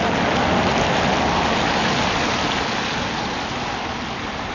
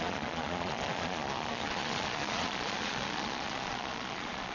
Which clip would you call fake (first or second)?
second